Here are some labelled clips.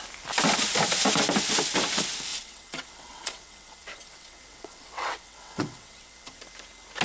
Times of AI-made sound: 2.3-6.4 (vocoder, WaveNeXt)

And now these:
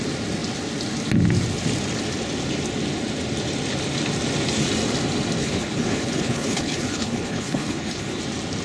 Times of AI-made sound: 5.4-8.2 (codec, HILCodec)

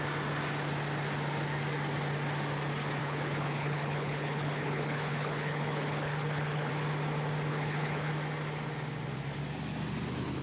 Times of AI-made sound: 3.0-6.7 (codec, HILCodec); 7.5-8.1

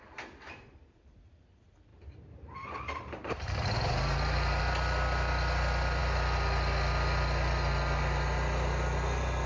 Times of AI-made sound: 1.9-4.6 (vocoder, BigVGAN v2)

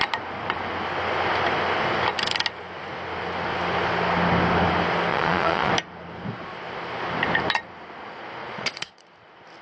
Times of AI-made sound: 5.1-5.7 (vocoder, Vocos); 8.4-9.1

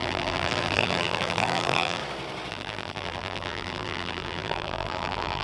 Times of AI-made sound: 0.0-2.0 (vocoder, BigVGAN v2); 2.5-5.4

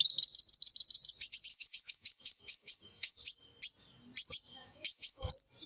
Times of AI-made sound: 1.5-3.2 (autoencoder, DAC-VAE); 4.5-5.3